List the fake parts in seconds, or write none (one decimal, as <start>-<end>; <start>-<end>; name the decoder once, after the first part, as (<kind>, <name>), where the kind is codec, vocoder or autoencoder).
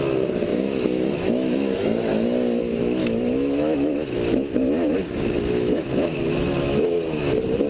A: 0.5-2.6 (autoencoder, DAC-VAE); 3.0-7.2